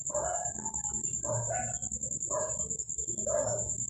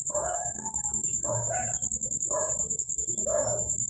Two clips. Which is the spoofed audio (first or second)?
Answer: second